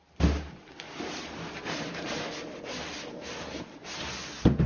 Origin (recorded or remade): recorded